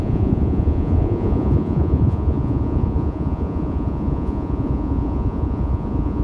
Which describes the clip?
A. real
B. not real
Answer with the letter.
B